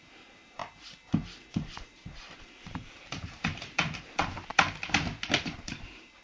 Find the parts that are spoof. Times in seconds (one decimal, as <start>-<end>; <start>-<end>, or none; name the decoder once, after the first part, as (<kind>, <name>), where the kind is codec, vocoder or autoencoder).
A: 0.0-0.6 (vocoder, BigVGAN v2); 1.5-4.5; 5.4-6.2